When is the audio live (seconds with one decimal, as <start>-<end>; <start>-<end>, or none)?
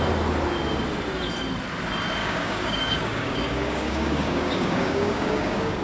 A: 0.0-2.2